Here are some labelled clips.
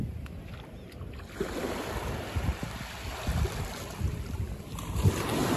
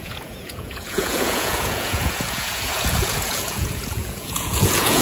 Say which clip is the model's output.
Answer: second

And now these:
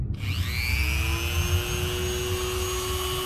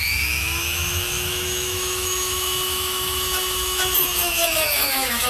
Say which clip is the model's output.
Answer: second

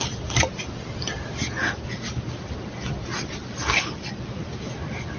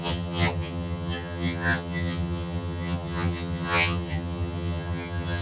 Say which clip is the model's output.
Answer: second